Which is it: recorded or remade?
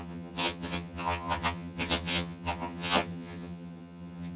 remade